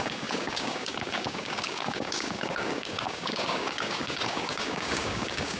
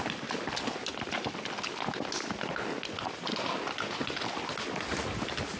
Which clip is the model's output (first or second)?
first